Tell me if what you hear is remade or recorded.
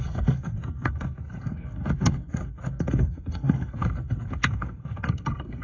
remade